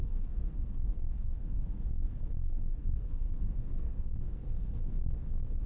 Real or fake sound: fake